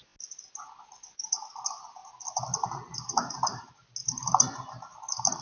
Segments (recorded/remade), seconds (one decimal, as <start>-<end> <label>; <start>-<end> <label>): 0.0-0.6 recorded; 0.6-1.3 remade; 1.3-5.4 recorded